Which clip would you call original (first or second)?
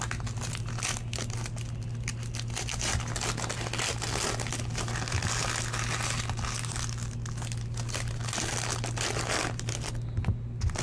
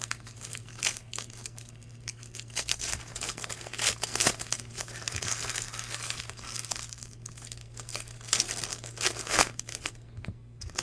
first